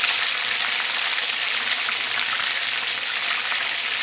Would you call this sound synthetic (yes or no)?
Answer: no